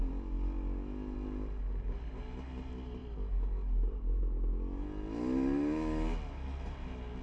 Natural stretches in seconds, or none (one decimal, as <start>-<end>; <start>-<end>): 0.0-7.2